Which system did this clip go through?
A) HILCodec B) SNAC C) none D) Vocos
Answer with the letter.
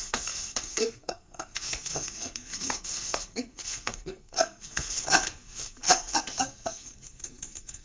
B